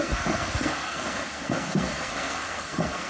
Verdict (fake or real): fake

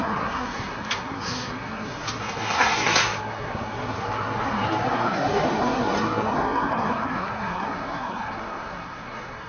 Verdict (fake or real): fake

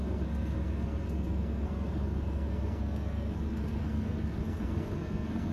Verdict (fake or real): fake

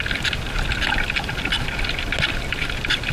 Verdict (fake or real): real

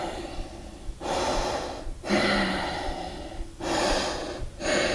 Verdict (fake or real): real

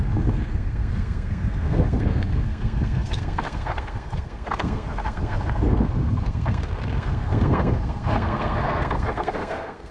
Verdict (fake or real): fake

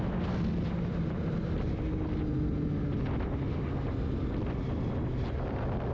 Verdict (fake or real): real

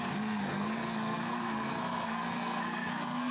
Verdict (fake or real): fake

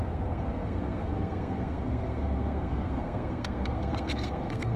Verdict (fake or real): fake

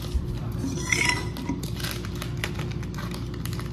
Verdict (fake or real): real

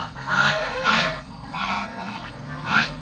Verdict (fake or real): fake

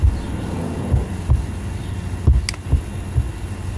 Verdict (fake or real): real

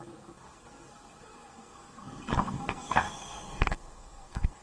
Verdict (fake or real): fake